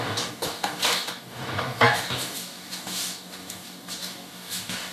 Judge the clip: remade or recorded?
remade